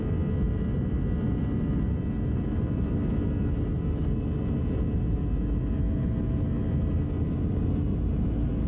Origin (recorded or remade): recorded